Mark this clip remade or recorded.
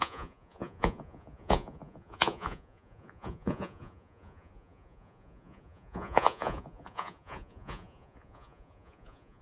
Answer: remade